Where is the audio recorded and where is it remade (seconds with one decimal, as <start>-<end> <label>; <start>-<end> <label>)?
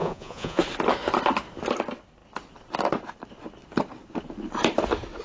0.0-0.6 remade; 0.6-5.2 recorded